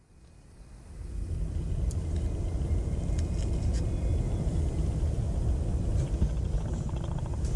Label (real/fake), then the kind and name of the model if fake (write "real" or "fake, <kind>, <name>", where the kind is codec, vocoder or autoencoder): real